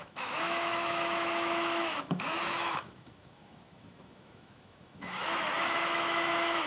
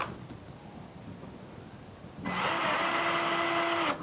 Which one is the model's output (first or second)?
first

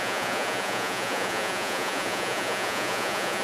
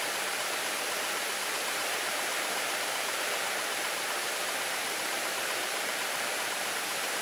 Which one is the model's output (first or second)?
first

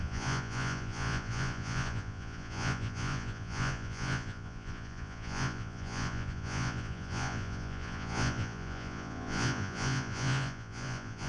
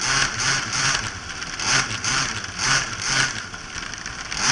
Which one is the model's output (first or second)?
first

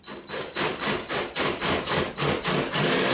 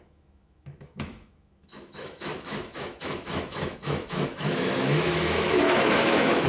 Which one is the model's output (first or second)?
second